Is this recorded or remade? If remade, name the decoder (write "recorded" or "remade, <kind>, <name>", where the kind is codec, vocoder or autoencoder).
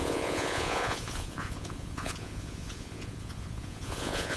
remade, vocoder, Vocos